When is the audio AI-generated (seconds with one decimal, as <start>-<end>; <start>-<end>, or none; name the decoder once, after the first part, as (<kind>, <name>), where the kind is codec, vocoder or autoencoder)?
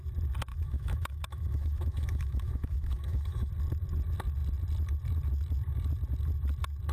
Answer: 0.5-3.5 (autoencoder, DAC-VAE)